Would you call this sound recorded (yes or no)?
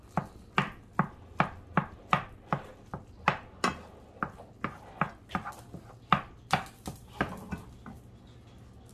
yes